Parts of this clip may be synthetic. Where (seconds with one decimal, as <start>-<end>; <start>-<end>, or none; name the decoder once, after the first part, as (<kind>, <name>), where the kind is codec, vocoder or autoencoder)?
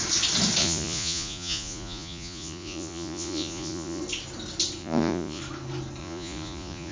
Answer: 0.6-4.0 (vocoder, Vocos); 4.8-5.4; 6.0-6.9